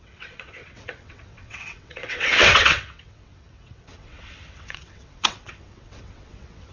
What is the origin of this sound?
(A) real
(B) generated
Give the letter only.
B